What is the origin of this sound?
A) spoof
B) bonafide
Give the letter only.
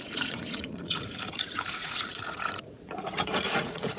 A